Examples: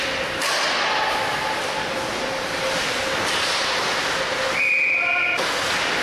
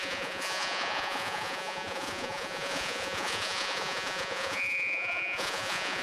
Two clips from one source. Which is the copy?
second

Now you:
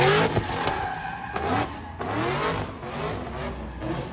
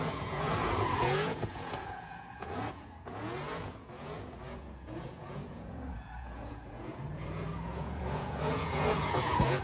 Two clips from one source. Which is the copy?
second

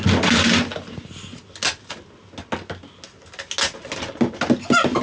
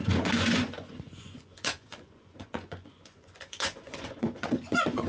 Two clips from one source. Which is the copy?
second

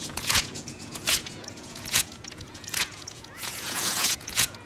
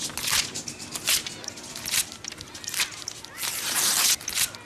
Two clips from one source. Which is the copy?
first